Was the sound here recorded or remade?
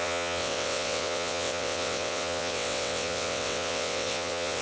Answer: remade